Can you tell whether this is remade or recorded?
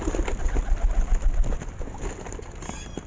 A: recorded